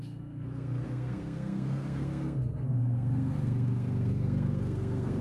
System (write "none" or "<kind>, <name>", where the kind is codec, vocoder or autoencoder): codec, SNAC